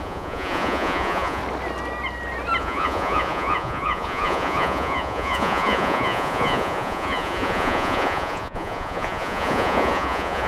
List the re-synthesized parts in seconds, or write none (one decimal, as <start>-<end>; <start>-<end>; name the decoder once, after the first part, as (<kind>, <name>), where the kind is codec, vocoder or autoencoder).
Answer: 0.0-1.4 (vocoder, Vocos); 2.6-10.5